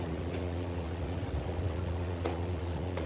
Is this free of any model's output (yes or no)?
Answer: no